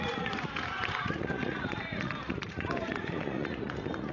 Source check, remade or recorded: remade